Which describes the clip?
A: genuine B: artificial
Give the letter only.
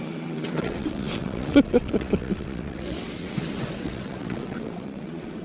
B